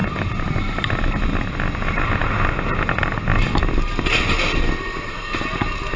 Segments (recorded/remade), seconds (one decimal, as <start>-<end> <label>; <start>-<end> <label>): 0.0-6.0 recorded